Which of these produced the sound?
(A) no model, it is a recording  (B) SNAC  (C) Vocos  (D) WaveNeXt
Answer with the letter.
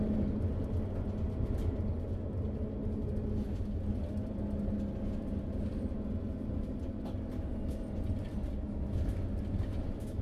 A